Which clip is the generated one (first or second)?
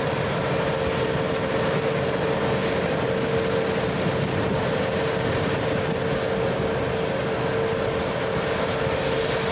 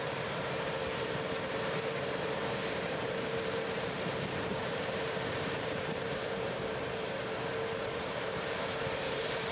second